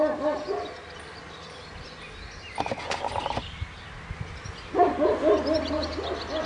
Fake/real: real